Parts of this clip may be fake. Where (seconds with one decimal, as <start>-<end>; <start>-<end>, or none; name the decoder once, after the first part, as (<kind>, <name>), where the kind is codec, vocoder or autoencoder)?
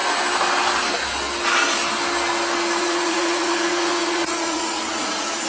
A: 2.8-5.5 (vocoder, Vocos)